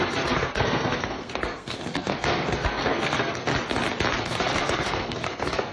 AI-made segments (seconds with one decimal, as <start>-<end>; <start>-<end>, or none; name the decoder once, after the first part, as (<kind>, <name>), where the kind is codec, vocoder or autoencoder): 0.0-3.5 (codec, SNAC); 4.2-5.7